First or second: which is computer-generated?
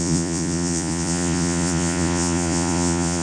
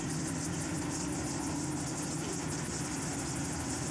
first